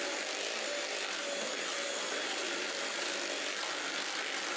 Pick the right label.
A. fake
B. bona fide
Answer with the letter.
B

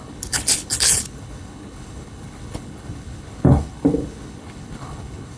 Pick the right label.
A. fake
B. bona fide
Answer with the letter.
A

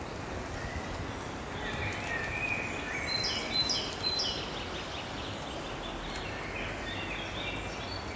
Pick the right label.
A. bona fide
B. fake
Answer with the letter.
A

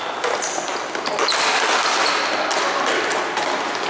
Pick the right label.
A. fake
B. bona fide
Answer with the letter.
B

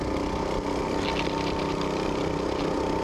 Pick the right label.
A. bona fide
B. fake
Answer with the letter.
A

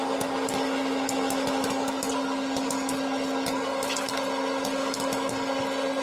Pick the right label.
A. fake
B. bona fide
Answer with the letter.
B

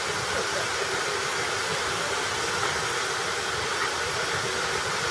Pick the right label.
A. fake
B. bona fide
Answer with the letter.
B